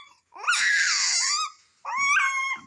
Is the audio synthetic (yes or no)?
no